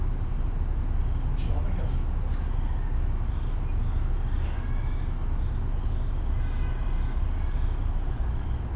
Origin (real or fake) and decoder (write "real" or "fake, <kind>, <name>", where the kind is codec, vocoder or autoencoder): real